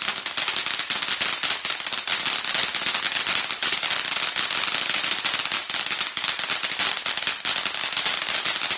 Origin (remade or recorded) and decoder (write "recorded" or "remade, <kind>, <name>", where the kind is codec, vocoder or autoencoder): recorded